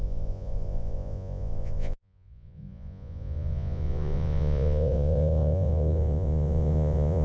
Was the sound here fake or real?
fake